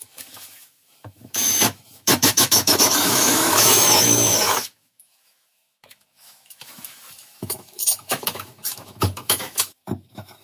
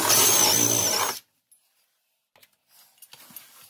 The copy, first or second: first